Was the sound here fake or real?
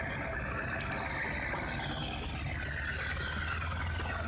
real